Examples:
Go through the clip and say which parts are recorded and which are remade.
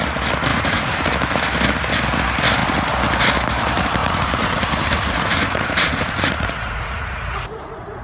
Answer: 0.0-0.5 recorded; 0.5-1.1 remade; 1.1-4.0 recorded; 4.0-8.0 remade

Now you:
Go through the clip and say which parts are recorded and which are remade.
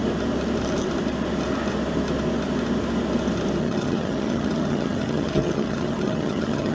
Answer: 0.0-3.6 recorded; 3.6-6.7 remade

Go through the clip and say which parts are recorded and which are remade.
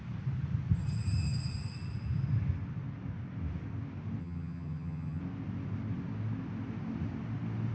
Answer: 0.0-4.2 recorded; 4.2-5.2 remade; 5.2-7.7 recorded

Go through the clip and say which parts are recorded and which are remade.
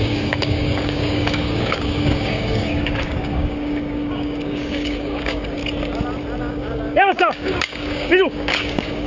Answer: 0.0-5.6 remade; 5.6-6.4 recorded; 6.4-9.1 remade